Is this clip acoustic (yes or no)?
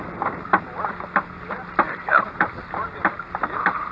yes